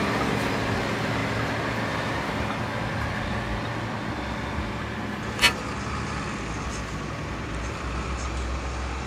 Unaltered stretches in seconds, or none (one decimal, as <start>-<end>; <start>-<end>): 0.0-9.1